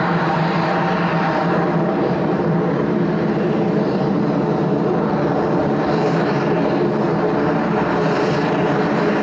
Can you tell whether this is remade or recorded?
remade